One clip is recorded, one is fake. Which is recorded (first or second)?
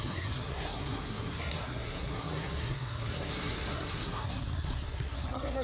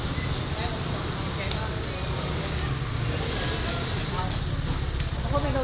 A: second